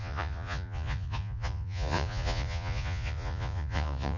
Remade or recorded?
remade